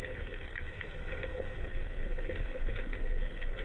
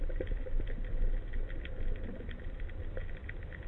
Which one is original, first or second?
second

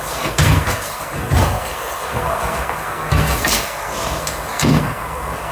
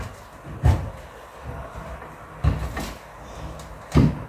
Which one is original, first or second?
second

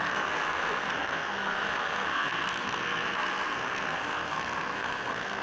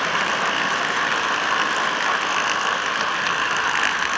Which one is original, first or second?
second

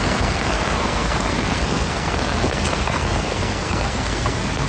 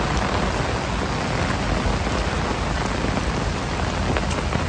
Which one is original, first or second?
second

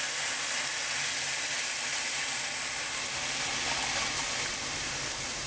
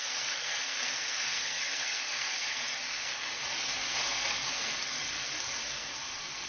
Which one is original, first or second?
first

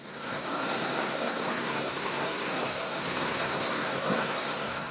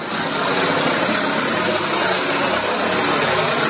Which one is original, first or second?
second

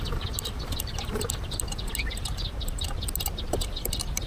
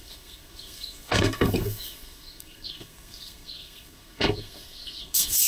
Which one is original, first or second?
first